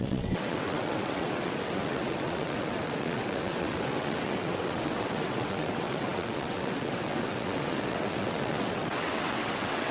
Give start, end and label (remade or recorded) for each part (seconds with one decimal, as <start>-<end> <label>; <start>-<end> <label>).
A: 0.0-9.9 remade